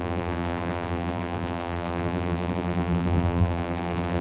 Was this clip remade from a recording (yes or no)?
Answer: yes